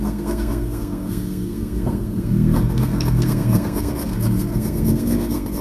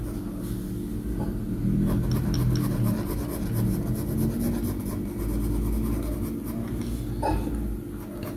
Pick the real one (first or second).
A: second